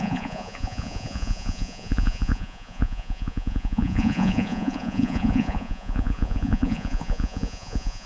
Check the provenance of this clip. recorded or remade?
remade